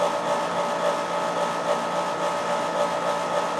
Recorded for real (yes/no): yes